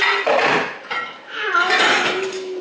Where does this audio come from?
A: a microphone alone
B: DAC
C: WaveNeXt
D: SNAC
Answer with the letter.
A